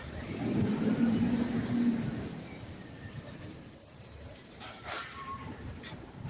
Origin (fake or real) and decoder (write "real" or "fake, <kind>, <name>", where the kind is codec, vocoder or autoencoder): fake, vocoder, BigVGAN v2